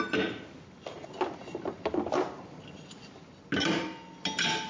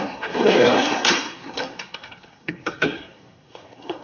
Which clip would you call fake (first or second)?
second